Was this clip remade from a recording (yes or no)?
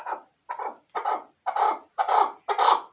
no